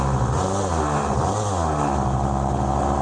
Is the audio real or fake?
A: real